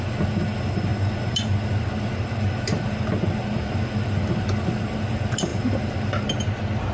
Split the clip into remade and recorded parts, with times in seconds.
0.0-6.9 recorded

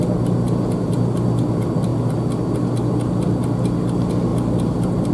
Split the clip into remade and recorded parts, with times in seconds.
0.0-5.1 recorded

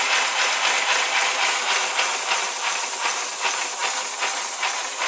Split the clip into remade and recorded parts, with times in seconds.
0.0-5.1 recorded

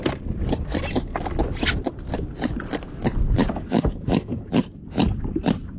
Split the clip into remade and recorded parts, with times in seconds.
0.0-3.5 recorded; 3.5-4.3 remade; 4.3-5.8 recorded

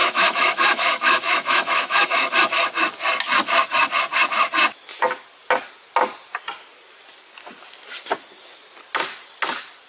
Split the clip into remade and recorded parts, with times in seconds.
0.0-2.3 remade; 2.3-9.9 recorded